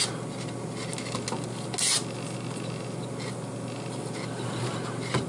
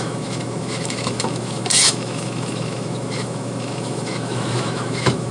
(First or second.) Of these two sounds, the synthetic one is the second